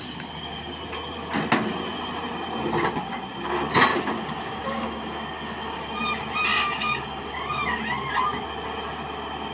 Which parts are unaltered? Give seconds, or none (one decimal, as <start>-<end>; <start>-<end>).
0.0-3.9; 6.0-6.5; 7.8-9.5